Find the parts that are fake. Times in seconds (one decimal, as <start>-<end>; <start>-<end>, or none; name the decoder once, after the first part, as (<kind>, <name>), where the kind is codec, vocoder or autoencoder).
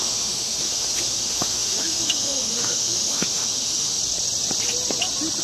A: 0.0-4.0 (autoencoder, DAC-VAE)